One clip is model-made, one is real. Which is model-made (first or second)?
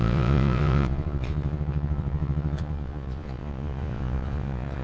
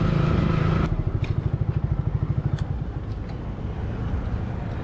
first